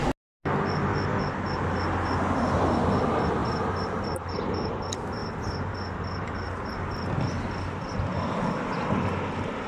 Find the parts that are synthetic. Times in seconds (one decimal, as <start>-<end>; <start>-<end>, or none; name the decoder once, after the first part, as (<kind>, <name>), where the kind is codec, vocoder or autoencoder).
3.4-4.7 (vocoder, BigVGAN v2)